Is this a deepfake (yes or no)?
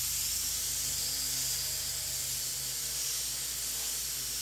no